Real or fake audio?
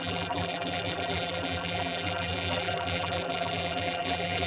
fake